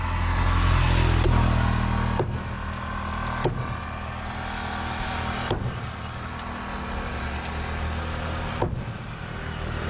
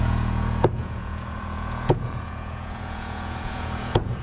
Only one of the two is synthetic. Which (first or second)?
second